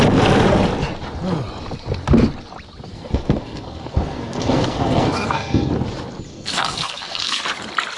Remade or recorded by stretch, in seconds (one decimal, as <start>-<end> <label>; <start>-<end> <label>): 0.0-2.9 recorded; 2.9-5.7 remade; 5.7-6.3 recorded; 6.3-7.4 remade; 7.4-8.0 recorded